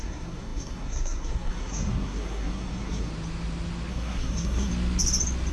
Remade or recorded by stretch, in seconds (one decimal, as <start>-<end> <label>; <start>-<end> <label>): 0.0-3.1 remade; 3.1-3.9 recorded; 3.9-4.7 remade; 4.7-5.5 recorded